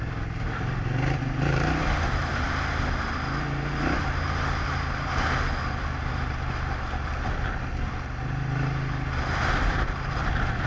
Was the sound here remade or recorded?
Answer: recorded